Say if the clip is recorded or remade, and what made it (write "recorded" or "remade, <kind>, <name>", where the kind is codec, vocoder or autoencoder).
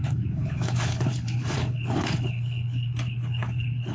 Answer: remade, codec, HILCodec